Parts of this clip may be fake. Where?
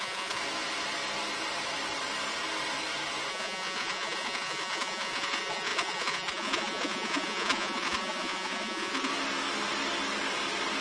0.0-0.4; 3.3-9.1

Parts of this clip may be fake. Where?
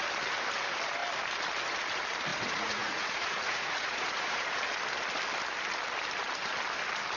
2.3-4.6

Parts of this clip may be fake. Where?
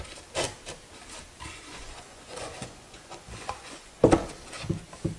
1.5-4.0